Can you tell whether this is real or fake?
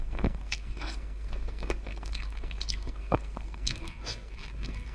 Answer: fake